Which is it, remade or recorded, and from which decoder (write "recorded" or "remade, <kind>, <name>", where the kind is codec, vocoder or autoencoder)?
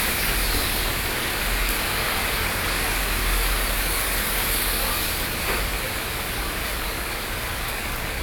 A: remade, codec, DAC